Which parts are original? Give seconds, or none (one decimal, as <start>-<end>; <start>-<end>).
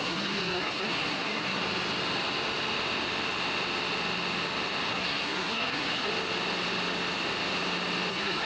1.6-4.9; 6.1-8.1